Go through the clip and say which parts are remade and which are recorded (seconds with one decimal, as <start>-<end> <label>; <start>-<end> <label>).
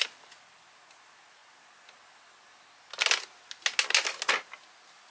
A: 0.0-5.1 recorded